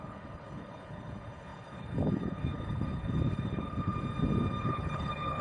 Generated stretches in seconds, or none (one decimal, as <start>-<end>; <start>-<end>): 0.0-3.9; 4.6-5.4